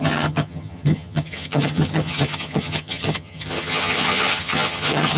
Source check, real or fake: fake